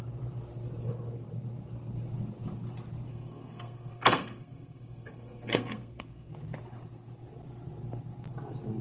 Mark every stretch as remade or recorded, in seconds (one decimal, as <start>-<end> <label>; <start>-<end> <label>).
0.0-3.1 recorded; 3.1-6.3 remade; 6.3-8.8 recorded